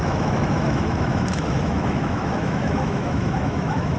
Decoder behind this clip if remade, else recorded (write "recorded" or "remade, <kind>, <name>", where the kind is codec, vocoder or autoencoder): remade, autoencoder, DAC-VAE